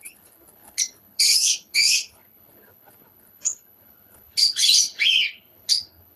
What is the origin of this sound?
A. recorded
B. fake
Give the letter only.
B